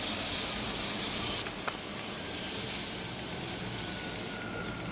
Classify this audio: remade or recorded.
recorded